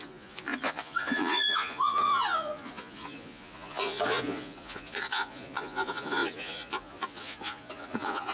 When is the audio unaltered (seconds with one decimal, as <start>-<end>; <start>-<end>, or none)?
none